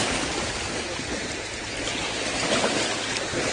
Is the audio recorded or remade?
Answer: recorded